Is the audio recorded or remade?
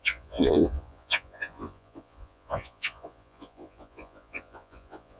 remade